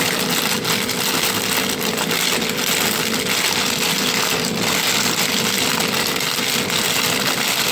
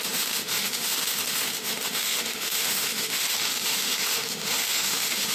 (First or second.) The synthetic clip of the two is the second